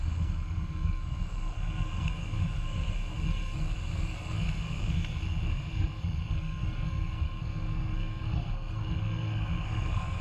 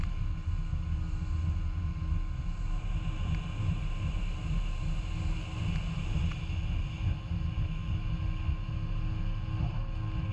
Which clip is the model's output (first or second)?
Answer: first